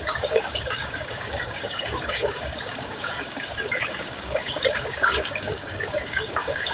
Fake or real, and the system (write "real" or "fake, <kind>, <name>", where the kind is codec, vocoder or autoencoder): fake, codec, DAC